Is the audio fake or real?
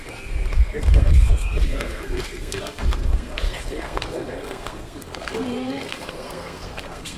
fake